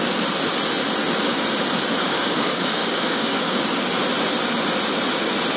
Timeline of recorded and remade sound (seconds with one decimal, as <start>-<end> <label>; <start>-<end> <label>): 0.0-2.0 recorded; 2.0-3.6 remade; 3.6-5.6 recorded